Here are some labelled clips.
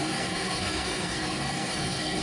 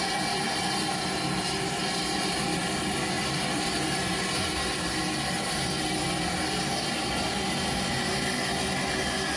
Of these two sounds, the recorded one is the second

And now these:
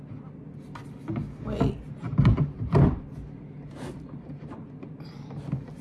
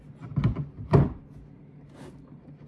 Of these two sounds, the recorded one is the second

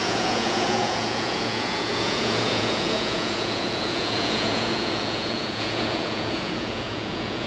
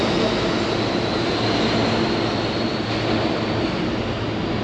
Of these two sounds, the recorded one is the second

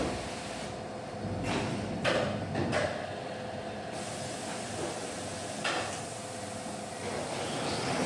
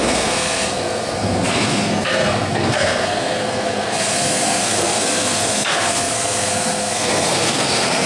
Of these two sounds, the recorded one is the first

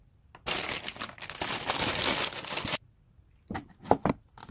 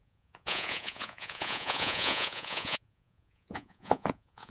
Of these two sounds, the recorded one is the first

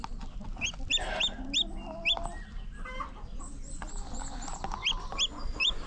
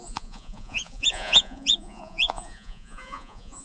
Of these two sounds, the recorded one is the first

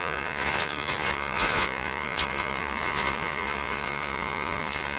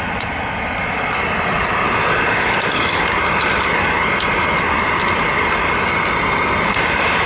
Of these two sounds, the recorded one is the second